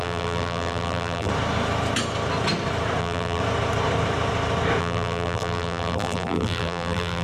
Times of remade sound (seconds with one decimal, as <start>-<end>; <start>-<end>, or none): 0.0-1.3; 3.0-3.4; 4.8-7.2